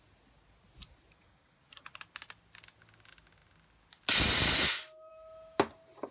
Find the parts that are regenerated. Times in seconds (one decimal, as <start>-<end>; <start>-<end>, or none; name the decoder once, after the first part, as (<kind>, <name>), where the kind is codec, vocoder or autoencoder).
none